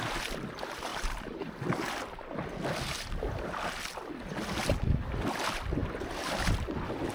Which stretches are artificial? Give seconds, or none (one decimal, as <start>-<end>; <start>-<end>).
0.9-1.5